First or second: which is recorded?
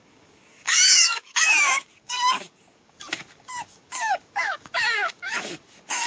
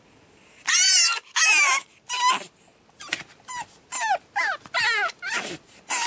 second